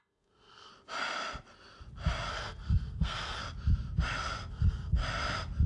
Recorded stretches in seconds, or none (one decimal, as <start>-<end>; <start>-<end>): 0.7-2.3; 3.4-4.5; 5.0-5.7